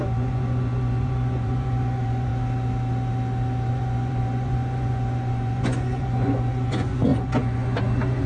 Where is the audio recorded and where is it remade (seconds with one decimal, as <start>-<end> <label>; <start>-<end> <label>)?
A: 0.0-2.3 remade; 2.3-3.7 recorded; 3.7-8.3 remade